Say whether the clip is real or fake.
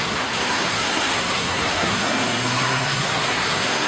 fake